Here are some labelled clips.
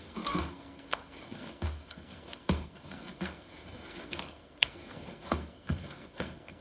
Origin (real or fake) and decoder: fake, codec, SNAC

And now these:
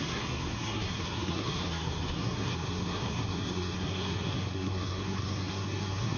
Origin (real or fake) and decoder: fake, codec, SNAC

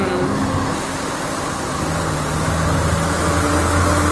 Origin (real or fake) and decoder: real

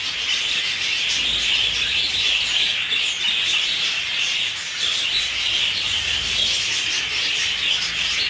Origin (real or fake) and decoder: real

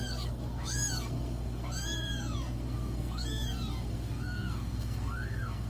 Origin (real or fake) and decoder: fake, codec, SNAC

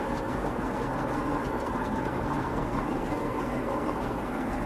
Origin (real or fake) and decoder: fake, codec, SNAC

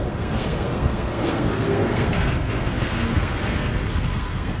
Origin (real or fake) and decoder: fake, codec, SNAC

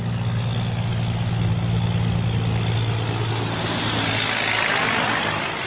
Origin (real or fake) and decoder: real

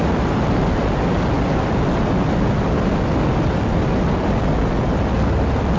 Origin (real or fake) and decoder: real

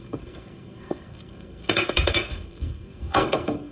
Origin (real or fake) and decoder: fake, codec, SNAC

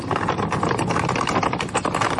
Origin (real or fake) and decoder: real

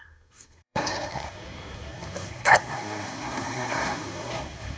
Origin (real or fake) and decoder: fake, codec, SNAC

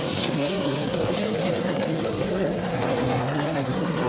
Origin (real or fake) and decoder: fake, codec, SNAC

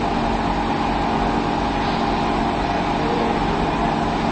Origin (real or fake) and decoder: real